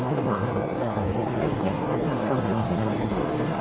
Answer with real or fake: fake